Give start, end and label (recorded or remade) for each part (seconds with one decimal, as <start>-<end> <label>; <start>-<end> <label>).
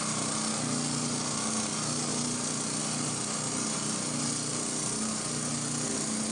0.0-6.3 recorded